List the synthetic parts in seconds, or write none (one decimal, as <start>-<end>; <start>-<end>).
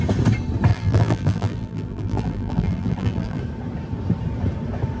0.7-3.4